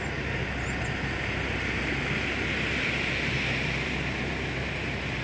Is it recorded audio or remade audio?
recorded